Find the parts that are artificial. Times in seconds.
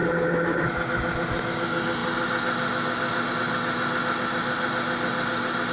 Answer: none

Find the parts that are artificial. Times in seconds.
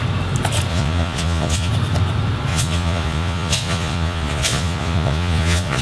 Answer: 0.7-1.7 (vocoder, Vocos); 2.5-5.8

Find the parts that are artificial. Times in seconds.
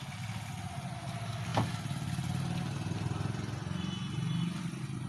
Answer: none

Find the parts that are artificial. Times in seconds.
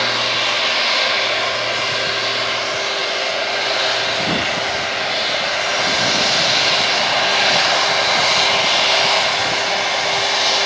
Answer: 3.0-3.8 (vocoder, Vocos)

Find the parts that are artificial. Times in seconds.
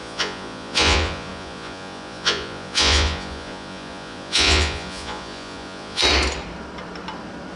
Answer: 0.0-6.0 (vocoder, Vocos)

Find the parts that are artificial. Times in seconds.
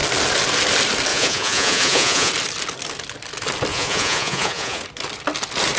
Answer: 1.1-2.3 (vocoder, Vocos); 3.7-4.8